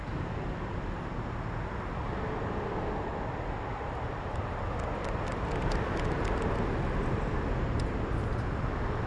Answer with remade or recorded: recorded